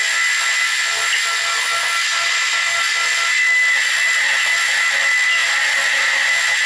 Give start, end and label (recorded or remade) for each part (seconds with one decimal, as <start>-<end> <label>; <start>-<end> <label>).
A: 0.0-6.7 recorded